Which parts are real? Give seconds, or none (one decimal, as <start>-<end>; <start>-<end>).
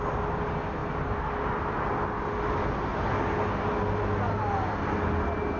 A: 0.0-5.6